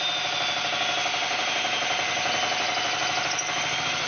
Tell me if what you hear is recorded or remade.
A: recorded